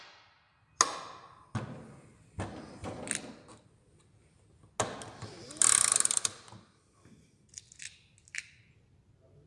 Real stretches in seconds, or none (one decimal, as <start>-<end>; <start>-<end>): 0.0-9.5